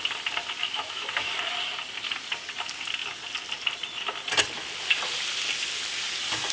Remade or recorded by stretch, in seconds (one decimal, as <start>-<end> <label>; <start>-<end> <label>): 0.0-0.6 recorded; 0.6-1.3 remade; 1.3-6.5 recorded